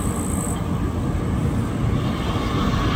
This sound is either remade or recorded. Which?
recorded